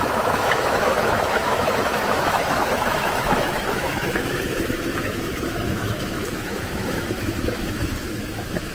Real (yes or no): no